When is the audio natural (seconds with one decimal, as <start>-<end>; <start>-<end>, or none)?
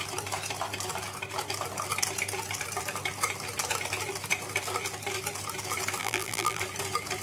0.0-6.0; 6.6-7.2